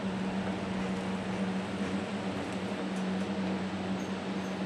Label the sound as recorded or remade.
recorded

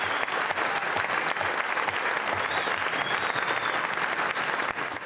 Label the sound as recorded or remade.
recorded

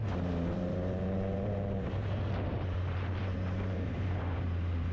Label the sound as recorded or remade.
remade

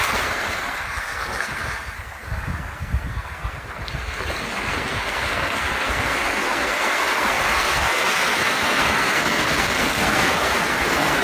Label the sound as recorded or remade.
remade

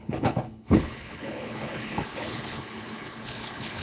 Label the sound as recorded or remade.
remade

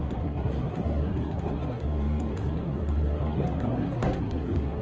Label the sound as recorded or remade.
remade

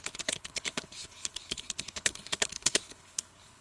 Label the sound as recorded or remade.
remade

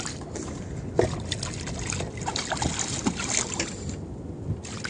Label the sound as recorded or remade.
recorded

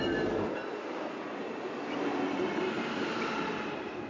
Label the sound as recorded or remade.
recorded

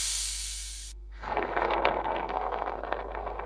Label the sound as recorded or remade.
remade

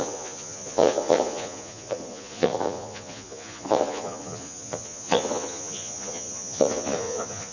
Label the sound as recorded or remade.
remade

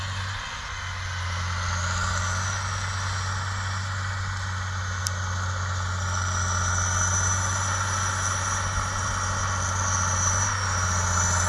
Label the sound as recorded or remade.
recorded